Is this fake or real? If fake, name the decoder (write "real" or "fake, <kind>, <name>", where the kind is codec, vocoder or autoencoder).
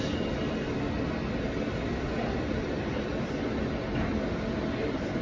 real